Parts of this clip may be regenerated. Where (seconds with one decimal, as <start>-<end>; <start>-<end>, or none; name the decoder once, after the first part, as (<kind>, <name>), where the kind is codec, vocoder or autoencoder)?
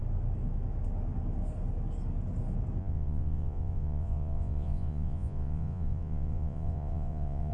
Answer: 2.8-7.5 (vocoder, Vocos)